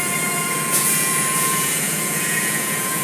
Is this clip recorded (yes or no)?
no